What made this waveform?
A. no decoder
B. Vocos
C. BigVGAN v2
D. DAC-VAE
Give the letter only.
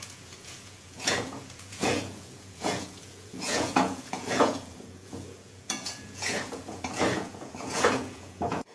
B